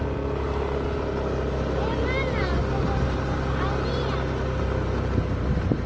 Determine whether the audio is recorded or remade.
recorded